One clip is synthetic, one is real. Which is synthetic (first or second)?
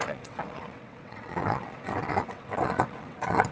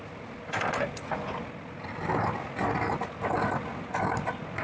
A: first